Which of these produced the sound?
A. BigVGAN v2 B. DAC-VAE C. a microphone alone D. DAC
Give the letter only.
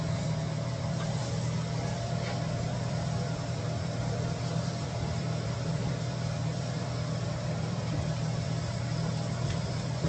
A